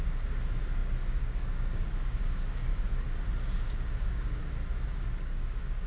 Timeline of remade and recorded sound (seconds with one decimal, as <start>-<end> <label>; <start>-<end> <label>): 0.0-2.7 remade; 2.7-3.9 recorded; 3.9-4.4 remade; 4.4-5.0 recorded; 5.0-5.9 remade